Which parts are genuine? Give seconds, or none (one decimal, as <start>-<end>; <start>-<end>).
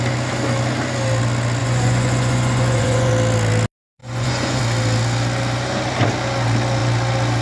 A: 0.0-1.6; 3.1-4.0; 4.6-7.4